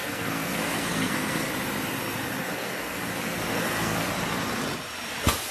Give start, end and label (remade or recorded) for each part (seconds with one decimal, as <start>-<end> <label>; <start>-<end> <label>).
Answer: 0.0-1.5 remade; 1.5-2.4 recorded; 2.4-3.0 remade; 3.0-3.5 recorded; 3.5-4.1 remade; 4.1-5.5 recorded